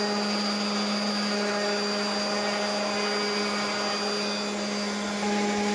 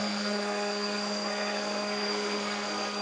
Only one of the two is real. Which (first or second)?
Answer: first